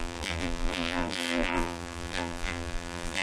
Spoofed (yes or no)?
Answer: yes